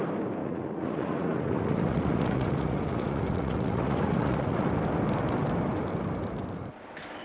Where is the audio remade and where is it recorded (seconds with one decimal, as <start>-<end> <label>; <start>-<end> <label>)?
0.0-0.4 recorded; 0.4-4.7 remade; 4.7-7.2 recorded